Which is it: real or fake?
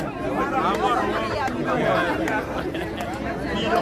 real